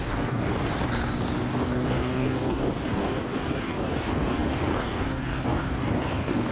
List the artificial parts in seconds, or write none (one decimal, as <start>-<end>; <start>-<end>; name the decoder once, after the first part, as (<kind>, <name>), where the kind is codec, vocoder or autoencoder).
0.0-0.5 (codec, DAC); 1.5-6.5